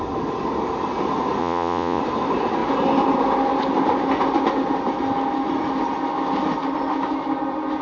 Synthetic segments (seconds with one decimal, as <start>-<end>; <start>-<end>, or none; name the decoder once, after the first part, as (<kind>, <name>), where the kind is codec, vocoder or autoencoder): 1.4-2.0 (vocoder, Vocos)